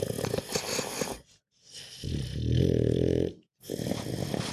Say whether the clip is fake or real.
real